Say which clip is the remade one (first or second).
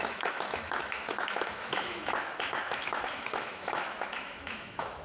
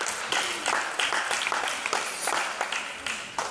first